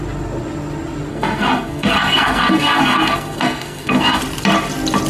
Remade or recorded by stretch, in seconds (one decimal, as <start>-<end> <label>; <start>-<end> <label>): 0.0-1.1 recorded; 1.1-4.2 remade; 4.2-5.1 recorded